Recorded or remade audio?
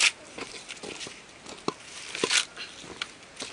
recorded